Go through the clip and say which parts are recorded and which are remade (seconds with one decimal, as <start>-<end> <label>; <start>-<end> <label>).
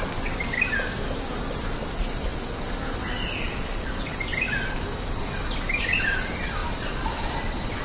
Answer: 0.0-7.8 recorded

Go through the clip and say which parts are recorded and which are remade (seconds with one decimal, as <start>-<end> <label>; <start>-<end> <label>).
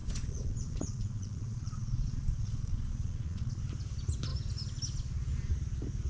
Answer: 0.0-3.6 remade; 3.6-6.1 recorded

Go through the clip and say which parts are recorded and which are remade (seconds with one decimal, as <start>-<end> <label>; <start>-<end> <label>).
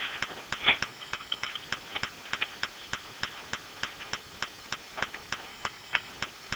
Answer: 0.0-0.9 recorded; 0.9-1.5 remade; 1.5-5.5 recorded; 5.5-6.1 remade; 6.1-6.6 recorded